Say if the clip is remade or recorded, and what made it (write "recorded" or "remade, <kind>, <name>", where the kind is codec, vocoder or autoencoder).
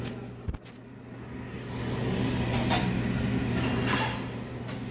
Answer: recorded